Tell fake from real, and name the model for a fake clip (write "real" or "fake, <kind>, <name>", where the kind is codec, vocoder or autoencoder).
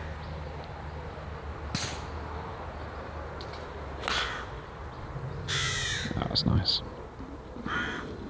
real